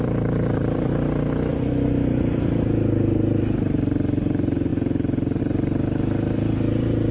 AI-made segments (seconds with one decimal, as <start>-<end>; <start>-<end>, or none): 0.0-0.9; 1.5-7.1